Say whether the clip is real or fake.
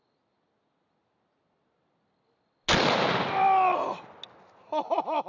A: real